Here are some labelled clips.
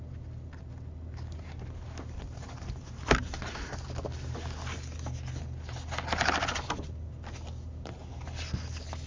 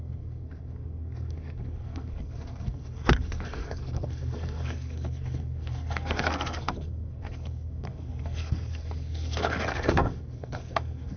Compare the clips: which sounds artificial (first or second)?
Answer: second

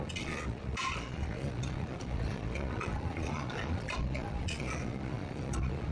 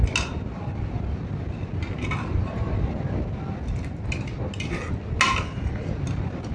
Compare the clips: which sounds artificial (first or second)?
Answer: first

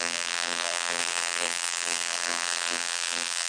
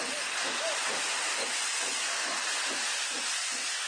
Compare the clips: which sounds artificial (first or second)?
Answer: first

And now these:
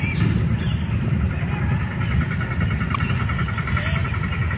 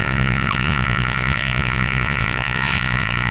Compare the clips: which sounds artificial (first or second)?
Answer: second